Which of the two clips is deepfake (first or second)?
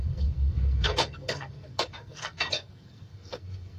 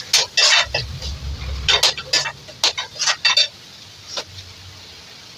first